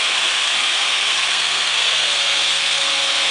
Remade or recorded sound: remade